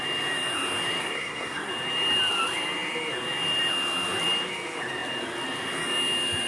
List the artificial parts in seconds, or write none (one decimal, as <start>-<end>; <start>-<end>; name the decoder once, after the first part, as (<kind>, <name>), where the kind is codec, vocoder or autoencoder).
1.0-1.7 (codec, SNAC)